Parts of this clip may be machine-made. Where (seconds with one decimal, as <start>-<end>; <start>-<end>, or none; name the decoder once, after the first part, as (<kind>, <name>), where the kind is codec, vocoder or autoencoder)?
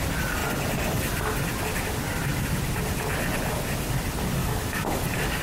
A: 4.4-5.4 (codec, DAC)